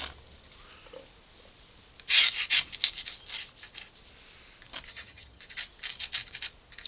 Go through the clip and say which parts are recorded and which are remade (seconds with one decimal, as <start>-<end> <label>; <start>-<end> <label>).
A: 0.0-4.9 recorded; 4.9-5.4 remade; 5.4-6.9 recorded